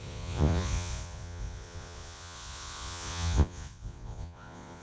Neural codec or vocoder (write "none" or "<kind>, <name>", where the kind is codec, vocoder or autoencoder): vocoder, Vocos